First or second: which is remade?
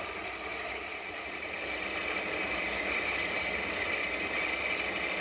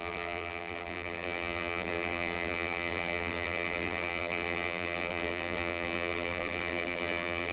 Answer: second